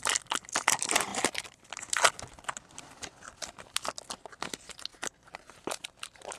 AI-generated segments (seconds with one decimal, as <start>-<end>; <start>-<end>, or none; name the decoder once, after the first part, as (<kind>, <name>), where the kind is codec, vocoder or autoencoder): 4.9-6.4 (vocoder, BigVGAN v2)